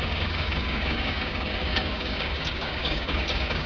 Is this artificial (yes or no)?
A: yes